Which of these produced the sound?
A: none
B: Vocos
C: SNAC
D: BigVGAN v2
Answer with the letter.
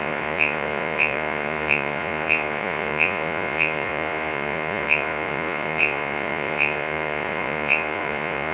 B